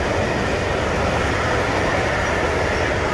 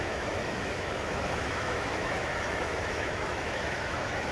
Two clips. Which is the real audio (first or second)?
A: first